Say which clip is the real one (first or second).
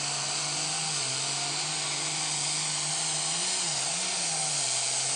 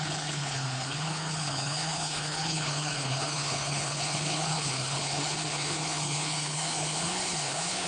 first